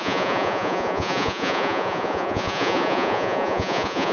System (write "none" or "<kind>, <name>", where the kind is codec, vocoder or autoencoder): vocoder, Vocos